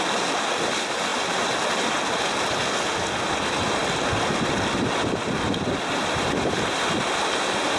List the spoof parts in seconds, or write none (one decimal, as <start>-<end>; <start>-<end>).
none